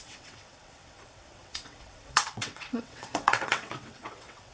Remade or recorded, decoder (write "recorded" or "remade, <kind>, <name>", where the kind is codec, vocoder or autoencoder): remade, vocoder, WaveNeXt